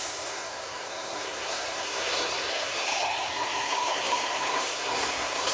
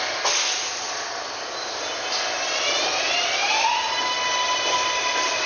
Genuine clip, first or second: second